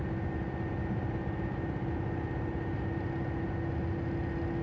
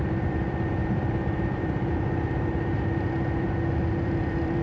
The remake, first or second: second